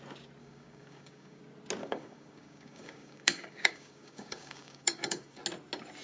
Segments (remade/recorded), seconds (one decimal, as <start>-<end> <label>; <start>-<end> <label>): 0.0-0.4 recorded; 0.4-1.4 remade; 1.4-1.8 recorded; 1.8-5.4 remade; 5.4-6.0 recorded